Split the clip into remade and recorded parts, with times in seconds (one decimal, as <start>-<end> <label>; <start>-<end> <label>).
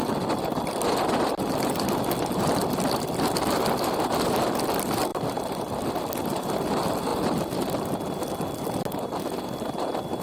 0.0-0.9 remade; 0.9-5.1 recorded; 5.1-5.9 remade; 5.9-10.2 recorded